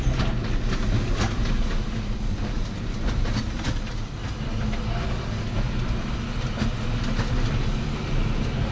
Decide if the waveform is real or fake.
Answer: real